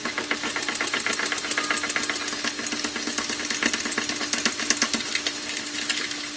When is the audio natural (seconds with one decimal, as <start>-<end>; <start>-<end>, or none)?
0.0-6.4